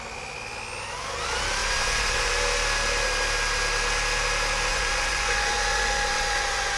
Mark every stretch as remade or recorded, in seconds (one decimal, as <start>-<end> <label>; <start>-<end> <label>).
0.0-1.6 recorded; 1.6-2.3 remade; 2.3-4.7 recorded; 4.7-6.8 remade